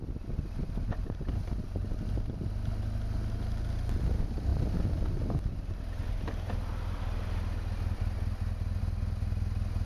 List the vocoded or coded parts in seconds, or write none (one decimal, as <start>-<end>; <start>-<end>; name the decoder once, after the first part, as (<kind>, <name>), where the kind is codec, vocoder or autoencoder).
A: none